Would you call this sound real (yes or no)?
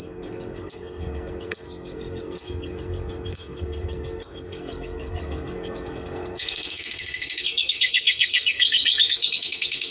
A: no